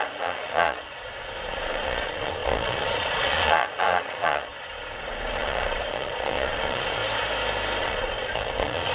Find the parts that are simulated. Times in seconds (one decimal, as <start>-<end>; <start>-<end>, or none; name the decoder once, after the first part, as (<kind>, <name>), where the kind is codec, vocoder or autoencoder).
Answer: 0.0-7.0 (vocoder, Vocos); 7.8-8.9

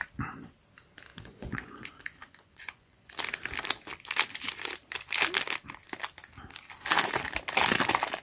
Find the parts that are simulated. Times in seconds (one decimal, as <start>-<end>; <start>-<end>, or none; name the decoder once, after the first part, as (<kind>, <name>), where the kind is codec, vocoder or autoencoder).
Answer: 1.1-3.1 (vocoder, Vocos)

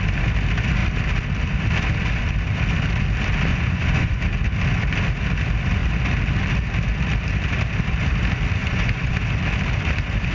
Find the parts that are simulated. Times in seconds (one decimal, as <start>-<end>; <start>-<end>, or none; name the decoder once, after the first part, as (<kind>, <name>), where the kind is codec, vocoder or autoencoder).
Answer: 3.5-4.2 (vocoder, Vocos); 8.6-9.2

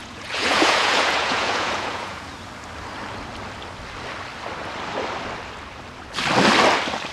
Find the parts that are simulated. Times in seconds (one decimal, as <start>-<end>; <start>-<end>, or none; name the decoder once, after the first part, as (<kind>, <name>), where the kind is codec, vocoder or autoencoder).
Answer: 0.0-2.3 (vocoder, Vocos)

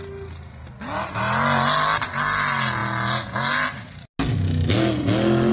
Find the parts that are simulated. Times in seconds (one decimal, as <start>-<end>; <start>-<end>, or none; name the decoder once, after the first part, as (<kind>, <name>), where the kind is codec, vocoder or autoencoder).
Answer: none

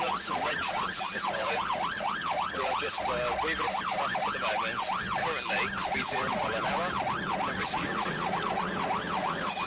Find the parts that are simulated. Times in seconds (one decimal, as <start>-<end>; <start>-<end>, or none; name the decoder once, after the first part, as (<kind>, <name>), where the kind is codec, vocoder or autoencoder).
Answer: 0.0-3.0 (vocoder, Vocos); 6.0-6.5; 7.5-9.7

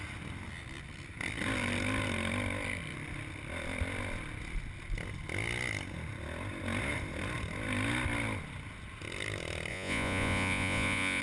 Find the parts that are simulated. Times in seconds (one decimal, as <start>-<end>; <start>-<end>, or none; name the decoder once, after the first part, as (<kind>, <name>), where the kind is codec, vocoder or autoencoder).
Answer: 9.7-11.2 (vocoder, Vocos)

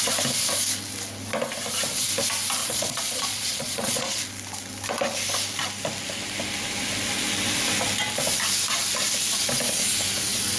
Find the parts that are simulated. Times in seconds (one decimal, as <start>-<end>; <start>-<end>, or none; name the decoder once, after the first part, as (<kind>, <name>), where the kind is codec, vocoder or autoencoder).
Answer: 2.6-4.2 (vocoder, Vocos)